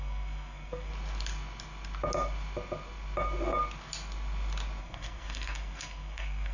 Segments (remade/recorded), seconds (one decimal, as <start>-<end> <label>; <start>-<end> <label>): 0.0-0.9 remade; 0.9-4.8 recorded; 4.8-6.5 remade